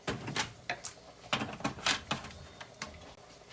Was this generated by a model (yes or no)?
no